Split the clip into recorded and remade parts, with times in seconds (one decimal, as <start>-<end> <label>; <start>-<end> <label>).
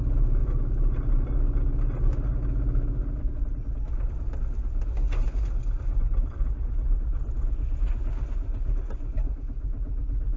0.0-10.4 recorded